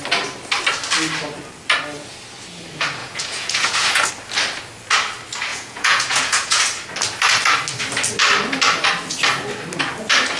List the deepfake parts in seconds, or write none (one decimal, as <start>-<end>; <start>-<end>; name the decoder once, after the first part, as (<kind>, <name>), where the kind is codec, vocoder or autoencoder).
3.0-4.1 (vocoder, Vocos); 5.5-6.6